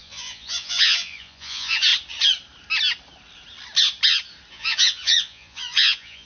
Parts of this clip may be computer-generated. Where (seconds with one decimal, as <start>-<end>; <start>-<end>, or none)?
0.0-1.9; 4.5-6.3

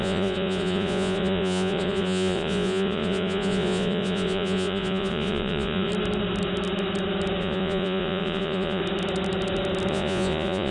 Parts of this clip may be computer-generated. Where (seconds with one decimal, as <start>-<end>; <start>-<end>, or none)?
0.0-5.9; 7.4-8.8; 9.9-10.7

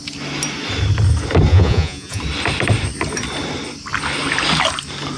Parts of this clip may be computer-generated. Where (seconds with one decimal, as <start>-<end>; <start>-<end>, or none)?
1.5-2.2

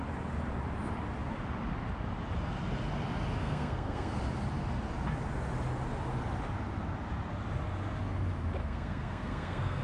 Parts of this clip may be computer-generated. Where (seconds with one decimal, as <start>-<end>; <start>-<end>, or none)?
3.4-4.2; 8.6-9.8